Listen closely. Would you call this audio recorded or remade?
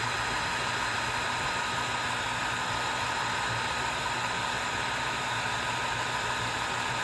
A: recorded